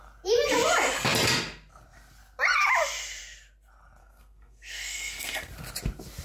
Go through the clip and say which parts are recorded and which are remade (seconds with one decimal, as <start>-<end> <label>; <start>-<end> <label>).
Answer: 0.0-4.0 recorded; 4.0-5.5 remade; 5.5-6.2 recorded